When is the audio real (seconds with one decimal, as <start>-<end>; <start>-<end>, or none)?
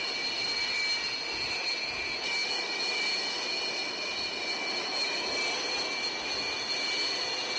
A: 0.0-7.6